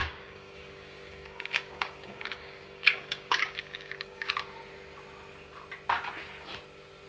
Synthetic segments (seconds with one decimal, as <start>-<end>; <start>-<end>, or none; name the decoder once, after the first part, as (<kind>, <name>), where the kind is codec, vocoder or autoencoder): 0.0-4.3 (codec, DAC)